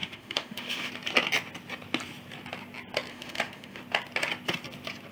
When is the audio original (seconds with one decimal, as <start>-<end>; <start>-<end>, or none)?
0.9-3.1; 3.8-5.1